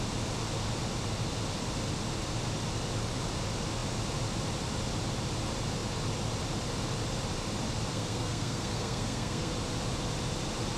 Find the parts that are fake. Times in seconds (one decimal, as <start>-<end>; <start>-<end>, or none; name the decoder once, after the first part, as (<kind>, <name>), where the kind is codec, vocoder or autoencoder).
7.9-9.5 (codec, SNAC)